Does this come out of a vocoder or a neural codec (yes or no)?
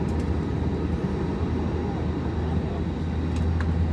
no